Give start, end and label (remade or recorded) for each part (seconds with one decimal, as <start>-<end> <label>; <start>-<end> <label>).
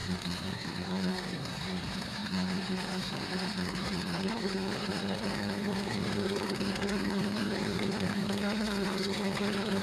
0.0-9.8 remade